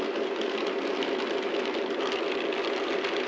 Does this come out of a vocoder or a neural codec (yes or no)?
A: no